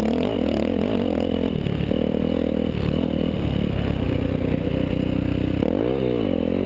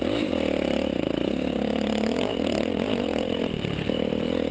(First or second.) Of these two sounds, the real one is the first